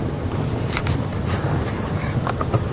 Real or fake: real